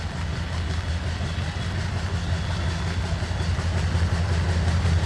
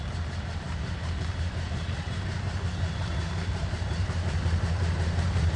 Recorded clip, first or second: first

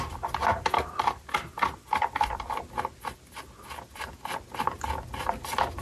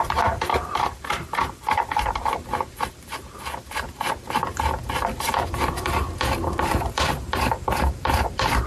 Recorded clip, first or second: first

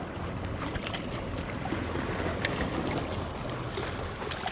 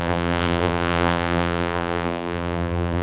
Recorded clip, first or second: first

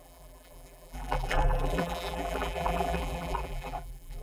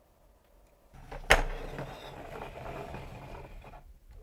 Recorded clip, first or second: second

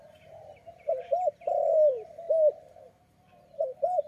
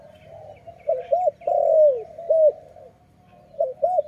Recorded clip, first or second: second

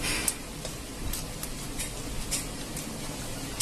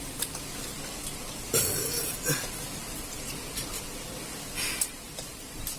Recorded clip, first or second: first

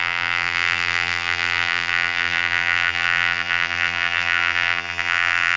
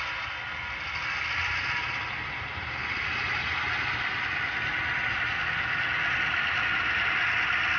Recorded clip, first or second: second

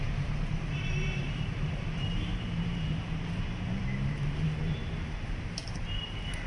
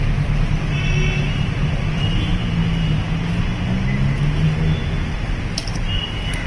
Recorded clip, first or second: second